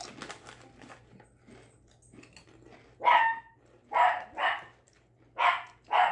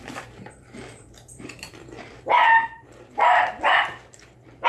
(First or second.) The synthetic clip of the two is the second